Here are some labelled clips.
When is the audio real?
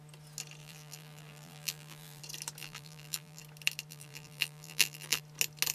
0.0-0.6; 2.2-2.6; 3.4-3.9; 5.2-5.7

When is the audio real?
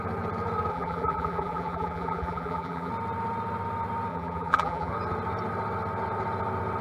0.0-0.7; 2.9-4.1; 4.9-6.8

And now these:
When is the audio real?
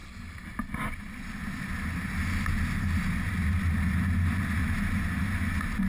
0.0-5.9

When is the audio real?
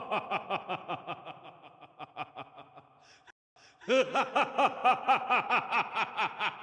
0.0-6.6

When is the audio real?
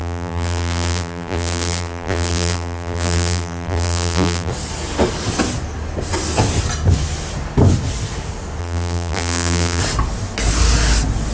4.5-8.6; 9.8-11.3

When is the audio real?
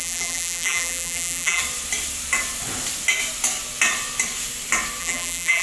1.6-5.0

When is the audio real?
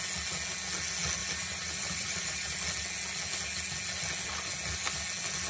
0.0-1.2; 2.6-5.5